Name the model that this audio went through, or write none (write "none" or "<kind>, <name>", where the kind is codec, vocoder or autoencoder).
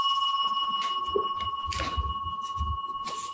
none